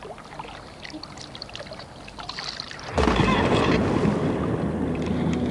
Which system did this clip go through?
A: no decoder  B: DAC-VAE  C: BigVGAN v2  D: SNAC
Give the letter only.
A